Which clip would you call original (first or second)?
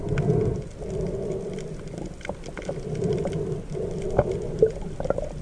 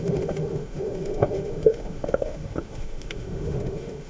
first